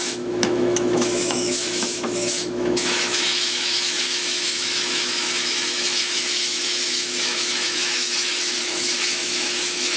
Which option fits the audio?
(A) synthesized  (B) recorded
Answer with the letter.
A